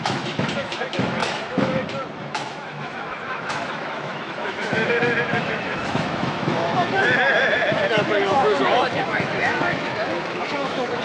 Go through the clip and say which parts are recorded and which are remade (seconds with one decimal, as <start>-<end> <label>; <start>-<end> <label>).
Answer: 0.0-11.0 remade